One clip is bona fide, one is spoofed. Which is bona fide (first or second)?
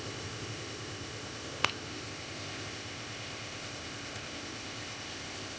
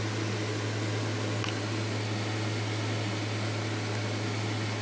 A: second